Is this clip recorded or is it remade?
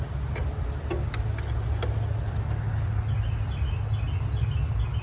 recorded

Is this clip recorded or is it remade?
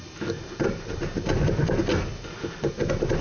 recorded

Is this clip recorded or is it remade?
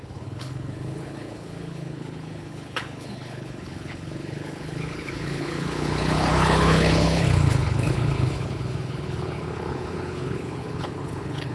remade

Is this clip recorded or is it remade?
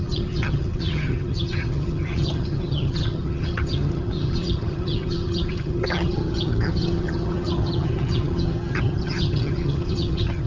remade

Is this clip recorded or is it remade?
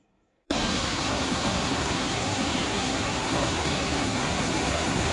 remade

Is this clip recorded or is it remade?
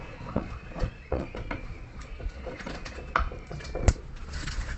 remade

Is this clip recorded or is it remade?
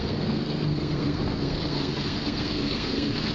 remade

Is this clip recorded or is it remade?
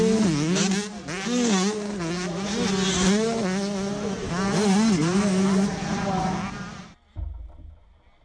recorded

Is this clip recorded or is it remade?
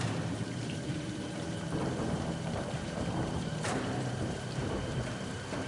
remade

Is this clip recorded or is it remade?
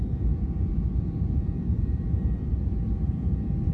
remade